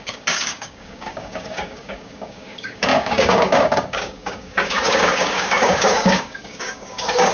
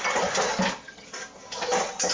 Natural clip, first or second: second